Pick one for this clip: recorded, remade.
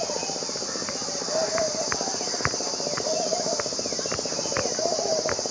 recorded